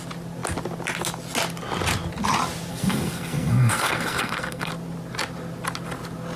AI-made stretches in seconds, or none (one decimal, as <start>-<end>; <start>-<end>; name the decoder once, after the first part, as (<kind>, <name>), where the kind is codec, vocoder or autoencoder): 2.7-4.7 (codec, SNAC)